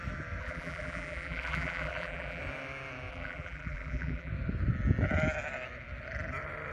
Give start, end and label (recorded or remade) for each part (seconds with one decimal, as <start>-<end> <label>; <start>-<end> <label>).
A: 0.0-0.4 recorded; 0.4-2.4 remade; 2.4-3.1 recorded; 3.1-4.3 remade; 4.3-6.7 recorded